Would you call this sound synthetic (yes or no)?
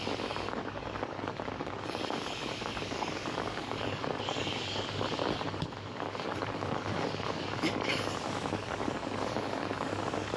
yes